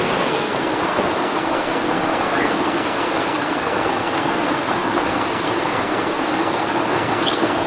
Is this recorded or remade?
remade